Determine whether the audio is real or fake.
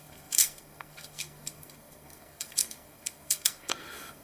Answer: fake